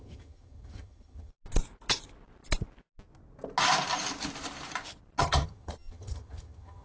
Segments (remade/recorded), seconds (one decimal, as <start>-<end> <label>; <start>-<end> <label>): 0.0-1.3 remade; 1.3-5.2 recorded; 5.2-6.8 remade